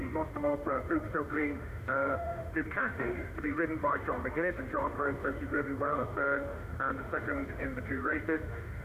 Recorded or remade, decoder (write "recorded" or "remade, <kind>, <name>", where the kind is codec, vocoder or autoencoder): remade, autoencoder, DAC-VAE